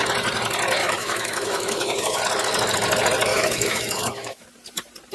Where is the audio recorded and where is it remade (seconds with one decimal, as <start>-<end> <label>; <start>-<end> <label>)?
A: 0.0-0.8 recorded; 0.8-2.2 remade; 2.2-3.3 recorded; 3.3-4.4 remade; 4.4-5.1 recorded